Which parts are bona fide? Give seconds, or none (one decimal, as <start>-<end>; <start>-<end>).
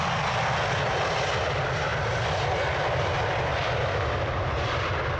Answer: 0.0-3.5